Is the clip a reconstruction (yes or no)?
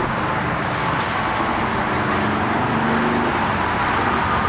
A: no